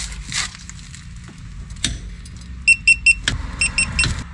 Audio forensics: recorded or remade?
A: recorded